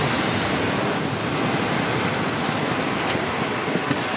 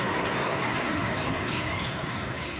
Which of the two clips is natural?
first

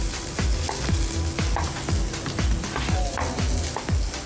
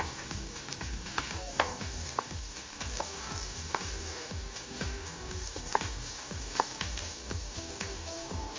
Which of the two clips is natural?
first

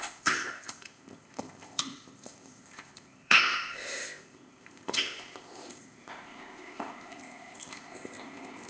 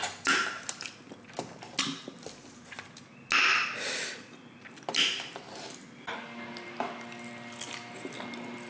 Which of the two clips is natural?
second